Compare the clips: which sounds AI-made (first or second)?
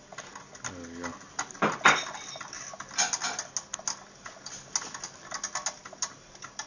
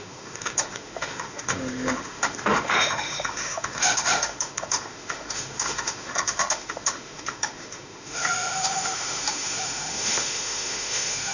second